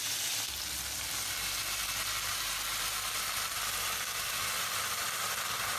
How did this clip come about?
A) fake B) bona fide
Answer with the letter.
B